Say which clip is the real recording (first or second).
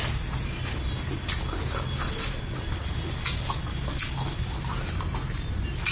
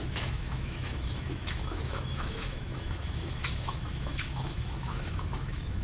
first